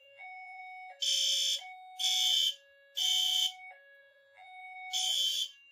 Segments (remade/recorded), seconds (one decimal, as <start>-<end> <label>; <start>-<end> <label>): 0.0-0.6 remade; 0.6-4.0 recorded; 4.0-4.6 remade; 4.6-5.7 recorded